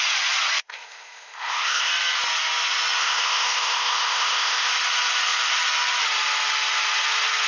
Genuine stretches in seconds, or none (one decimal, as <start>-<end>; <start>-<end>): 0.0-0.6; 1.9-3.0; 4.7-7.5